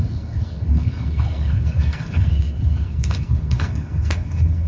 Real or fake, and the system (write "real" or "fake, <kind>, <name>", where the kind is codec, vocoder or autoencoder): fake, codec, SNAC